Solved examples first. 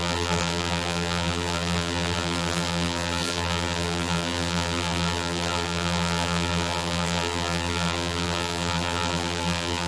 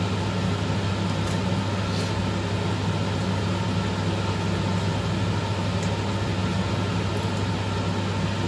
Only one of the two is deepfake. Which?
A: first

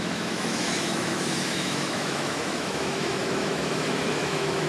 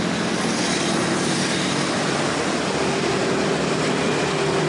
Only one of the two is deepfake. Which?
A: first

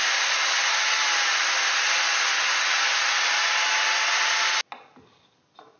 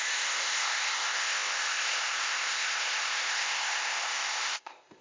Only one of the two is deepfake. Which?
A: second